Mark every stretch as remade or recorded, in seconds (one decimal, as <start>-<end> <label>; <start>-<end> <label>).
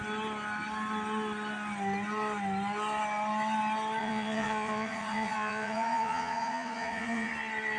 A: 0.0-4.0 recorded; 4.0-7.3 remade; 7.3-7.8 recorded